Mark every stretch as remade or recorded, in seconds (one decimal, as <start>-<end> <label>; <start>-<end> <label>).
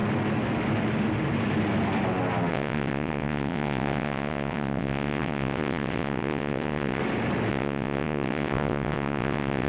0.0-2.5 recorded; 2.5-7.0 remade; 7.0-7.5 recorded; 7.5-9.7 remade